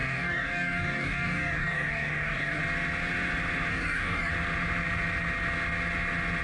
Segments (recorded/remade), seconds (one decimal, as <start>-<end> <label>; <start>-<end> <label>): 0.0-2.6 remade; 2.6-3.7 recorded; 3.7-4.3 remade; 4.3-6.4 recorded